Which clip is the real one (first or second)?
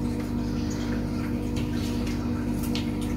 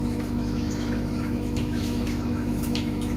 first